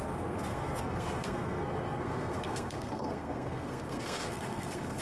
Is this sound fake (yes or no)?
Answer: yes